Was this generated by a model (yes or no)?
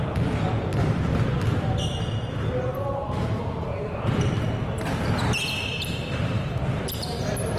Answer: no